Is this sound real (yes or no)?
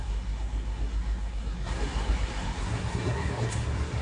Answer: no